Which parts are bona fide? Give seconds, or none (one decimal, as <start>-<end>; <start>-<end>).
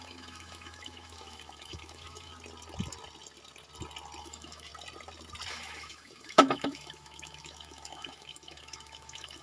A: 2.3-4.2; 4.7-5.5